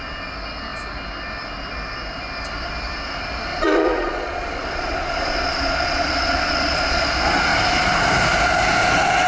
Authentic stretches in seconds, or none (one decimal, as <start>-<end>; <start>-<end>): 0.0-3.5; 7.0-9.3